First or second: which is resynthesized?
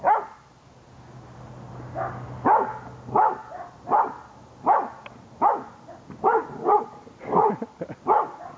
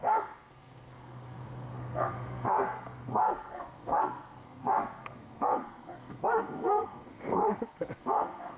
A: second